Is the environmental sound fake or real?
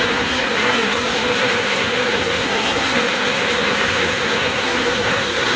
fake